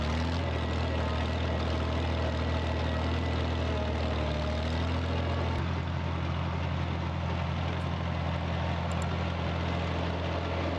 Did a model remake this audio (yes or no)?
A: no